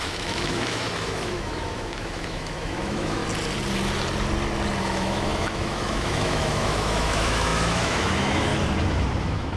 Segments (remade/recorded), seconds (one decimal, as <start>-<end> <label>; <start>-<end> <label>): 0.0-3.2 remade; 3.2-4.8 recorded; 4.8-8.5 remade; 8.5-9.2 recorded; 9.2-9.6 remade